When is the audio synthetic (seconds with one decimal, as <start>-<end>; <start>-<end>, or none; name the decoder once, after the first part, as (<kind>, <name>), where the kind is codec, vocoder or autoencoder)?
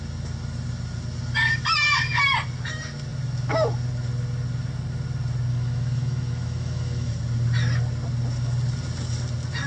5.5-7.1 (autoencoder, DAC-VAE)